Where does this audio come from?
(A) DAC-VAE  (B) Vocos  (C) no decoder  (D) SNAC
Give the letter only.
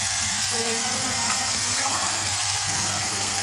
D